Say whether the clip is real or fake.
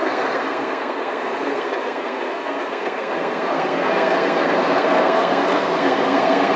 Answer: fake